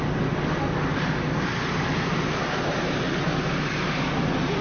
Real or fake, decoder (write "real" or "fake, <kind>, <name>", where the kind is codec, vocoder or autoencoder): real